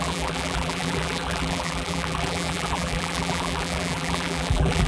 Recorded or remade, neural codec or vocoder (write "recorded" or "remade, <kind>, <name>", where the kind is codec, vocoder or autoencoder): remade, vocoder, BigVGAN v2